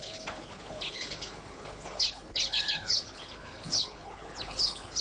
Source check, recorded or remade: remade